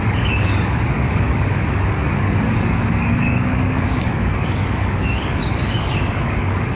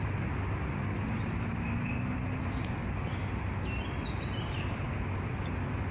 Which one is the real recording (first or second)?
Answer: second